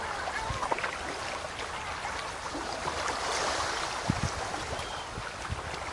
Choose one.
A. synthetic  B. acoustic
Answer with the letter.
B